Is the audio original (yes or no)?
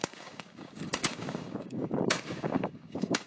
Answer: no